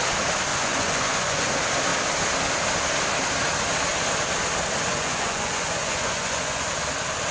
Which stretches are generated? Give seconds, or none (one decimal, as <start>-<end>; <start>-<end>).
0.5-1.5; 4.9-6.7